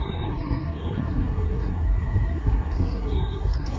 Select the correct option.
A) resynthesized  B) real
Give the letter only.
A